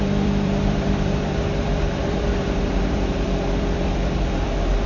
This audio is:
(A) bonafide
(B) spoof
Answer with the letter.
B